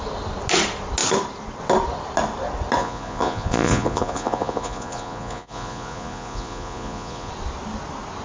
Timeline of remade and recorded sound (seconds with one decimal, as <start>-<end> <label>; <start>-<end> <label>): 0.0-2.8 recorded; 2.8-7.3 remade; 7.3-8.2 recorded

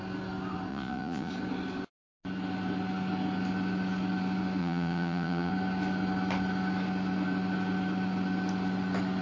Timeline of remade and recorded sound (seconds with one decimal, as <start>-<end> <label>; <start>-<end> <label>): 0.0-0.7 recorded; 0.7-1.3 remade; 1.3-4.6 recorded; 4.6-5.5 remade; 5.5-9.2 recorded

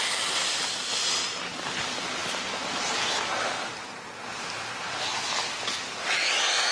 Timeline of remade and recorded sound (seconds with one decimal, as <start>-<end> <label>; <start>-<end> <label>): 0.0-6.7 recorded

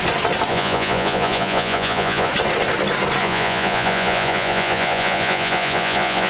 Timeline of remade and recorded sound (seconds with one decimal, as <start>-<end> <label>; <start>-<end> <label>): 0.0-0.5 recorded; 0.5-2.3 remade; 2.3-3.2 recorded; 3.2-6.3 remade